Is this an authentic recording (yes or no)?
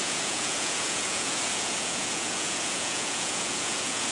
no